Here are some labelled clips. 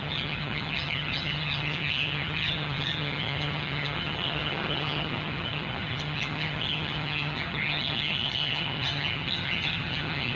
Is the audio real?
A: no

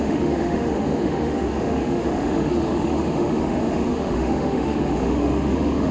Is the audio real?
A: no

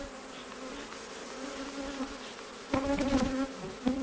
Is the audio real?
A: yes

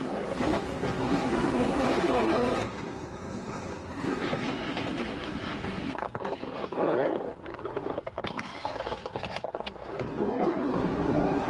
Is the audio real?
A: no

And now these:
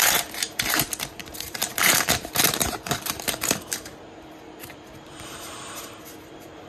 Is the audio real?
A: no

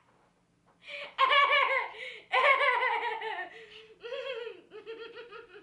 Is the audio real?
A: yes